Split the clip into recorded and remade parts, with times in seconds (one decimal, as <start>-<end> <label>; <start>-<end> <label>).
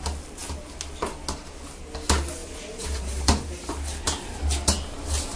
0.0-2.4 recorded; 2.4-3.7 remade; 3.7-5.4 recorded